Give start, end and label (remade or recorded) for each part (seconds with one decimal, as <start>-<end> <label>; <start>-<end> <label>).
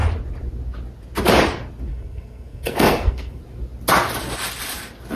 0.0-1.9 recorded; 1.9-3.4 remade; 3.4-5.2 recorded